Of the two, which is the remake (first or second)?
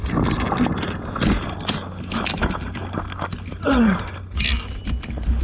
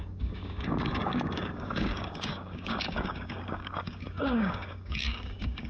second